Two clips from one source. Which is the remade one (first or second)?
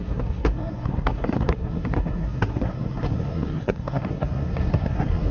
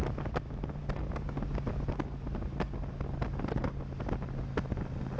first